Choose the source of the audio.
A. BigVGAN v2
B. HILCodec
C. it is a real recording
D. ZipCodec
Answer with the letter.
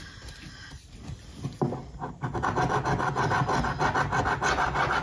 C